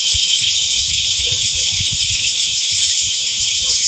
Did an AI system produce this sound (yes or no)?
yes